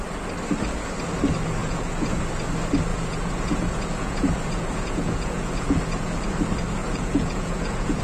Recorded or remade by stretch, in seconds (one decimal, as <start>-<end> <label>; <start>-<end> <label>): 0.0-1.6 recorded; 1.6-2.2 remade; 2.2-2.9 recorded; 2.9-6.2 remade; 6.2-6.8 recorded; 6.8-8.0 remade